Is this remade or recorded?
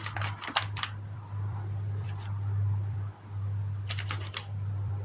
remade